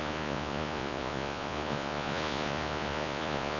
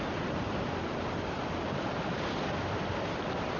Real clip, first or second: second